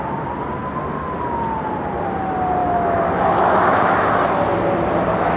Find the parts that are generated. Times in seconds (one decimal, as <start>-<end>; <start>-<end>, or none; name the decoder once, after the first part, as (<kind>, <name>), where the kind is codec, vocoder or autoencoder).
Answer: 2.6-3.9 (autoencoder, DAC-VAE)